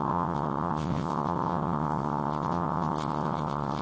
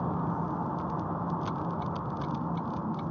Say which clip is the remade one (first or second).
first